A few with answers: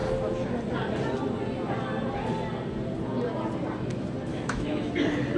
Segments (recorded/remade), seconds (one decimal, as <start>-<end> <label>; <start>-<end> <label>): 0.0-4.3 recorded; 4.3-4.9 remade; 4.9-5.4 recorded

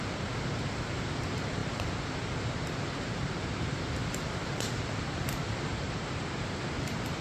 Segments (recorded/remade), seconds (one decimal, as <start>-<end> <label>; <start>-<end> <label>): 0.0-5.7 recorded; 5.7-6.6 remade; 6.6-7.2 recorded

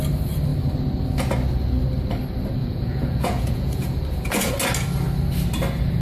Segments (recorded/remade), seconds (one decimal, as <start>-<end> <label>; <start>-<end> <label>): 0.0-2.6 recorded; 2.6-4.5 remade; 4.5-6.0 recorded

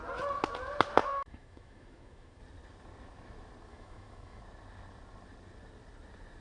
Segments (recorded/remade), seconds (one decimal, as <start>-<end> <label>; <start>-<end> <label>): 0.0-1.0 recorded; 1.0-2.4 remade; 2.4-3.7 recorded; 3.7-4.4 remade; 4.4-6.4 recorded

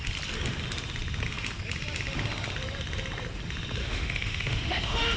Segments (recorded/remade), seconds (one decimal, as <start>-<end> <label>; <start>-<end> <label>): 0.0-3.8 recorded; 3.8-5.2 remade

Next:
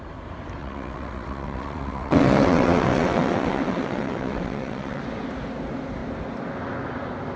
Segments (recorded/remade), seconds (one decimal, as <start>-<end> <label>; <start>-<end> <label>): 0.0-0.6 recorded; 0.6-5.0 remade; 5.0-7.4 recorded